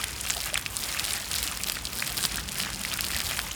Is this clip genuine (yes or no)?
yes